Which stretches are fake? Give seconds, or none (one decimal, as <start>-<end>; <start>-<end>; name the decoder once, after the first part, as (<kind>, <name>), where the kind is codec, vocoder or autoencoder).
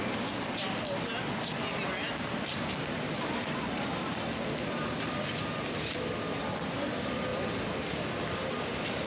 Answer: none